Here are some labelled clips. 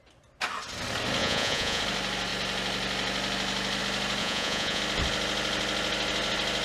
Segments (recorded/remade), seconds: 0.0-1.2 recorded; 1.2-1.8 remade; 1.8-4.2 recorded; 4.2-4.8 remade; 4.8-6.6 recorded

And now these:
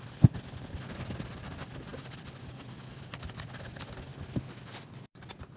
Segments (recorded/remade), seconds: 0.0-5.6 recorded

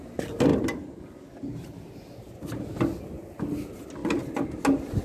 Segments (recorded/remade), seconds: 0.0-5.0 recorded

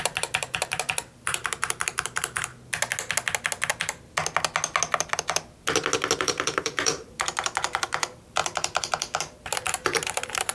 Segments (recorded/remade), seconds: 0.0-2.5 remade; 2.5-6.2 recorded; 6.2-10.5 remade